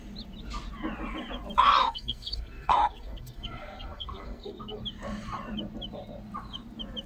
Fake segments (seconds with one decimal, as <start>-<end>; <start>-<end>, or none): 1.8-4.8